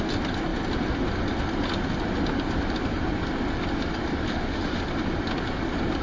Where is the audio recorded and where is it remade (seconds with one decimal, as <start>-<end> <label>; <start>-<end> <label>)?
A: 0.0-4.3 recorded; 4.3-4.8 remade; 4.8-6.0 recorded